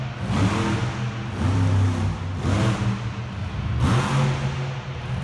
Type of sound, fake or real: real